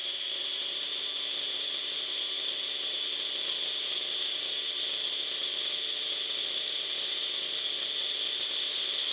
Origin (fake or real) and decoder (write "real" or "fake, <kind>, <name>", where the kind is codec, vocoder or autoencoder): fake, vocoder, BigVGAN v2